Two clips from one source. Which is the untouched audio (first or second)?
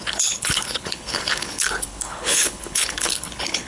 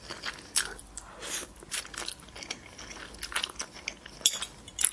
second